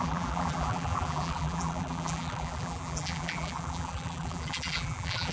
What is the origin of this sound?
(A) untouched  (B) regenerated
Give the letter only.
B